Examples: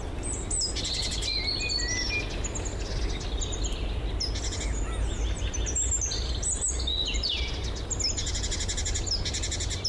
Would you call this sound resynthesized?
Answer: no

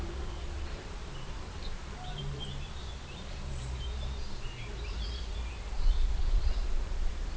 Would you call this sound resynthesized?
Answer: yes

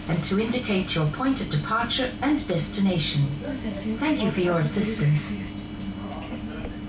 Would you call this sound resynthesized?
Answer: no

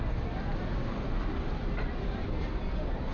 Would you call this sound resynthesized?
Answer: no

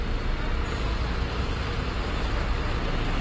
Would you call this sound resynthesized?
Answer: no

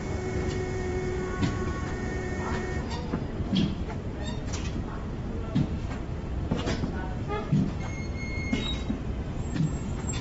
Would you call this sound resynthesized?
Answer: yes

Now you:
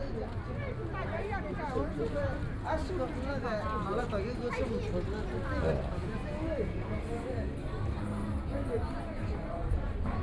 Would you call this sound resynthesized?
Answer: no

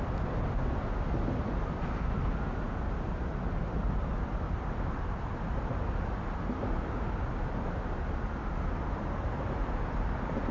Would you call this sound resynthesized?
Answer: no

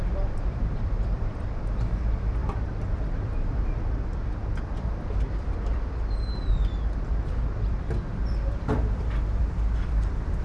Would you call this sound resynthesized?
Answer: yes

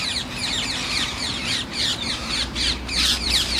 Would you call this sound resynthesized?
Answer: yes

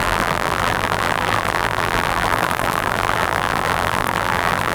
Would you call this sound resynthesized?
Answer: yes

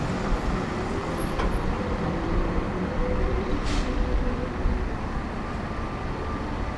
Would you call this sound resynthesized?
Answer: yes